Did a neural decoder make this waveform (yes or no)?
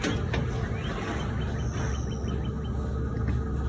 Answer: no